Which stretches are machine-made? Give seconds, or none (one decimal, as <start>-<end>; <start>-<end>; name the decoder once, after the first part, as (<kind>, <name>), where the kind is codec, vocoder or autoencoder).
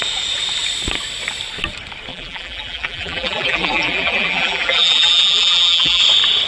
2.1-6.0 (vocoder, BigVGAN v2)